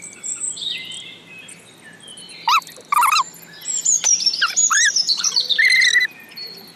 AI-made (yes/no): no